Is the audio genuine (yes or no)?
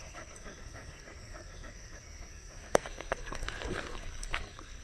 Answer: no